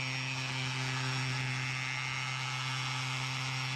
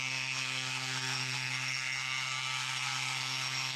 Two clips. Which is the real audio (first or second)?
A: first